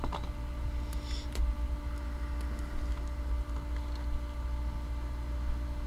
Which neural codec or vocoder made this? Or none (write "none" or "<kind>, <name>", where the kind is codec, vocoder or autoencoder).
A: none